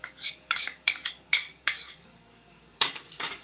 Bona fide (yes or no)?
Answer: no